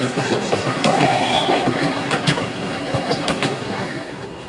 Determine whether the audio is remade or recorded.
remade